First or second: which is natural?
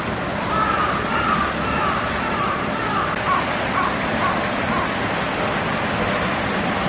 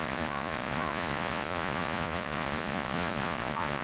first